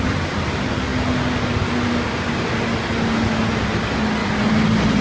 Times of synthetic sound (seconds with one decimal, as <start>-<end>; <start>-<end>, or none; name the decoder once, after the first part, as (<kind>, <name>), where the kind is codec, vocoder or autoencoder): none